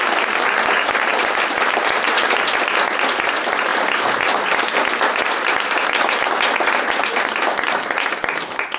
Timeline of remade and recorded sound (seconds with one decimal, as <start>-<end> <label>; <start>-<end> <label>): 0.0-8.8 recorded